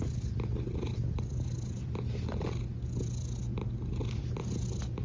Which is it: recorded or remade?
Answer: recorded